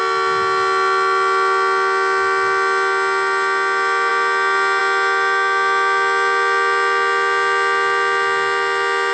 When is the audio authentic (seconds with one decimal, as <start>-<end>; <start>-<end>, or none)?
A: 0.0-9.1